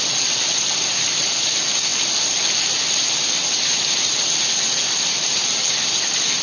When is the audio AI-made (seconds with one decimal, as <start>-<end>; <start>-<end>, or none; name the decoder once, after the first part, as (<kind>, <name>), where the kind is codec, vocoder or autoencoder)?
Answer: none